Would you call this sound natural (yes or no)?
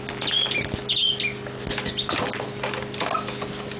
yes